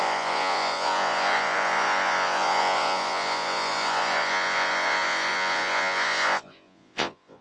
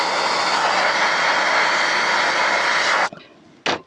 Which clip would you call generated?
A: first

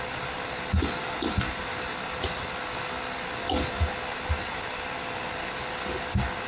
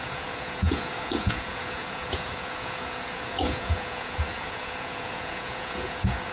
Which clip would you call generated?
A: second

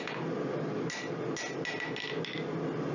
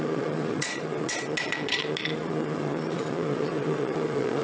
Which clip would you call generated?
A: second